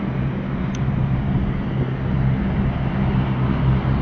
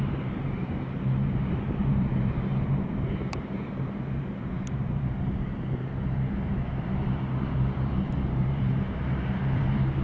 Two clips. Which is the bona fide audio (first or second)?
first